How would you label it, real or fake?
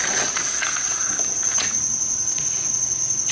fake